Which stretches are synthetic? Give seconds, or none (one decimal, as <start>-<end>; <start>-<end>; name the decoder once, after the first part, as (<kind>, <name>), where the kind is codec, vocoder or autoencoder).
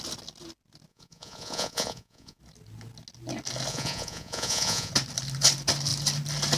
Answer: 0.9-2.4 (vocoder, Vocos); 3.7-4.9